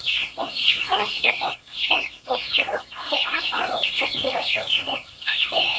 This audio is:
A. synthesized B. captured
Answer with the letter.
A